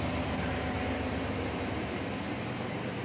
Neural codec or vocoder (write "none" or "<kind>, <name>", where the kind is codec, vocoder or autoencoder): none